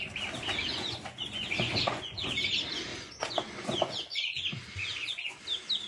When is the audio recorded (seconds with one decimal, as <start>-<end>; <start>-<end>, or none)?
0.0-0.7; 2.3-2.9; 5.4-5.9